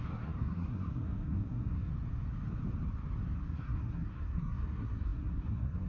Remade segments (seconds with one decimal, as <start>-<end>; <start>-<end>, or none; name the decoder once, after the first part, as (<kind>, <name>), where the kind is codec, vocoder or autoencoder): 0.0-1.9 (codec, SNAC); 3.4-5.9